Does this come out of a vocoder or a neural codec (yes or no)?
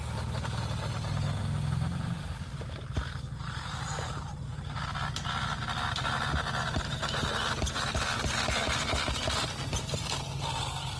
no